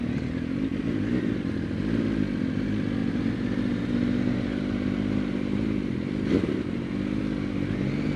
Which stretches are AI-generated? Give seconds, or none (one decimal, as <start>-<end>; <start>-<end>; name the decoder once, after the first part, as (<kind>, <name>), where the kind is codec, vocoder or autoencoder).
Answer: 3.0-7.2 (vocoder, BigVGAN v2)